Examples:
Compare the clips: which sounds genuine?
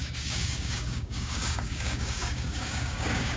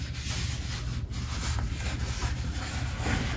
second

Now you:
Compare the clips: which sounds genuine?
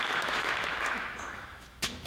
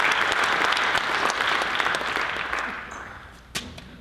second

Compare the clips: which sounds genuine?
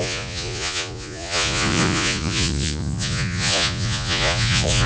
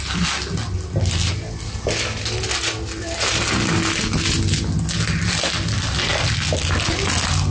second